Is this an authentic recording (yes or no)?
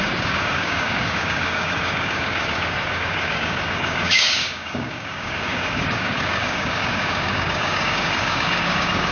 no